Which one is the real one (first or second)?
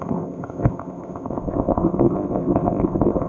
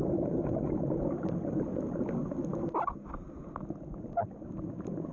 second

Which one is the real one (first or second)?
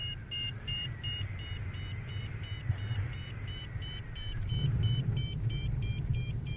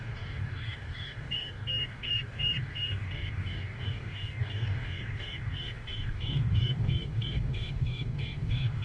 first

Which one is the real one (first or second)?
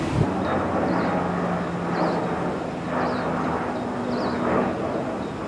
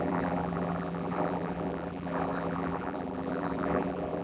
first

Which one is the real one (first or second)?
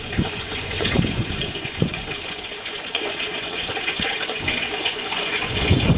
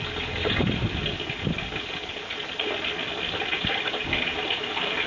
second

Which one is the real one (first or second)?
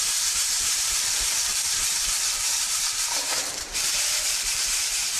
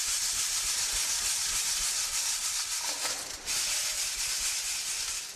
second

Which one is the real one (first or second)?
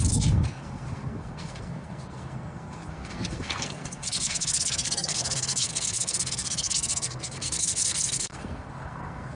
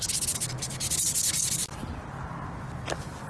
second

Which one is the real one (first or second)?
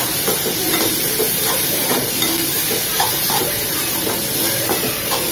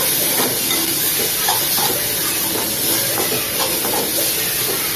second